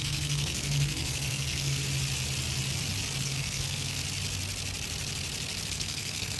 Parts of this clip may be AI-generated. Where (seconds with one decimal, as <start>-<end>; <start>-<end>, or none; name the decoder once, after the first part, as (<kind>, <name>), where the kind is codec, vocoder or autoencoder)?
0.0-1.8 (codec, SNAC); 3.2-4.0; 5.7-6.4